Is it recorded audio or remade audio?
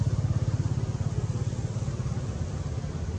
recorded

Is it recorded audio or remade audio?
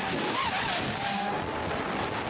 recorded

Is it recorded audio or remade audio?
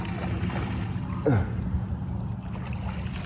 recorded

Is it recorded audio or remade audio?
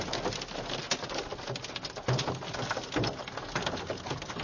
recorded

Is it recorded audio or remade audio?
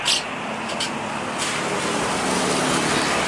recorded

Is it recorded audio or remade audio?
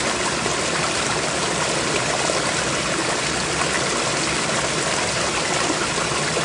recorded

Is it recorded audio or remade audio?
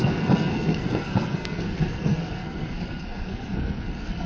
remade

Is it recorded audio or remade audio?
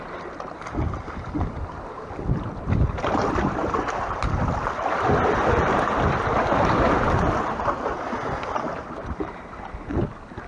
recorded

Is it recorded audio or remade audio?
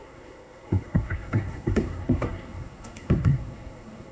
remade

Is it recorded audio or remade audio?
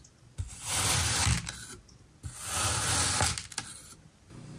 recorded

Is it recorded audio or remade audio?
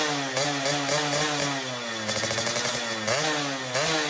recorded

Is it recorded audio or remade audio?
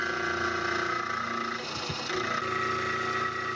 recorded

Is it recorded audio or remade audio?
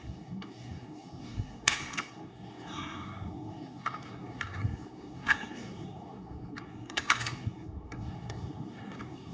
remade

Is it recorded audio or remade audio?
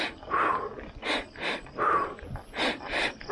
recorded